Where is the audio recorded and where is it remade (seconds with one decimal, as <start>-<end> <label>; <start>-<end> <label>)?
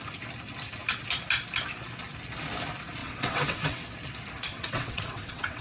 0.0-3.0 recorded; 3.0-3.8 remade; 3.8-4.5 recorded; 4.5-5.6 remade